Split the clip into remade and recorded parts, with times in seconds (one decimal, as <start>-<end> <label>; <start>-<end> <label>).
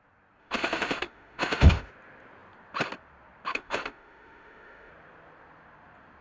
0.0-0.4 recorded; 0.4-1.9 remade; 1.9-3.5 recorded; 3.5-4.9 remade; 4.9-6.2 recorded